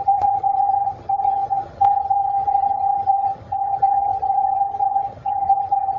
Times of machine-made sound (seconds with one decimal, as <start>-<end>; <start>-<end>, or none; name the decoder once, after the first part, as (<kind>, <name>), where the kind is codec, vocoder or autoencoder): 0.0-6.0 (vocoder, HiFi-GAN)